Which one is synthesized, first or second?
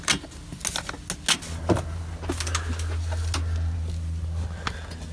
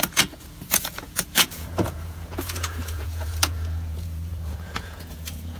second